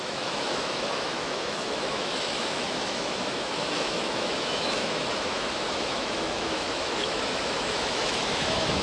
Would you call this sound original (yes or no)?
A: no